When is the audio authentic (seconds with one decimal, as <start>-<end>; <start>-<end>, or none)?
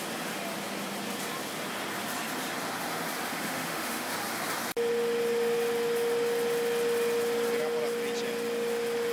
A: 0.0-3.3; 4.1-9.1